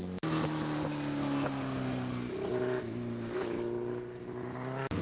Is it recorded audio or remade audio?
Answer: recorded